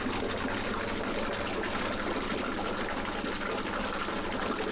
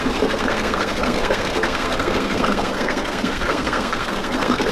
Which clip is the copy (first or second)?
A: second